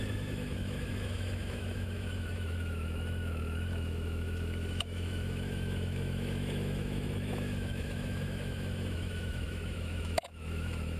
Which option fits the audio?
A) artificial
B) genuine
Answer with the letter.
A